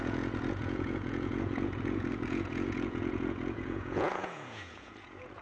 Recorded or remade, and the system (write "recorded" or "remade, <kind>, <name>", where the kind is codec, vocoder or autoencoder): remade, vocoder, Vocos